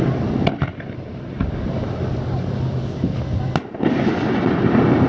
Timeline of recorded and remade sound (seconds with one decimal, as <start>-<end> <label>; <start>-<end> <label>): 0.0-5.1 recorded